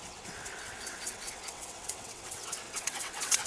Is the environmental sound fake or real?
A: fake